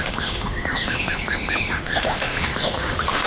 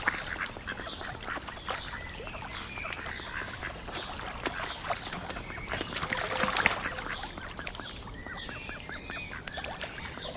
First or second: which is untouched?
second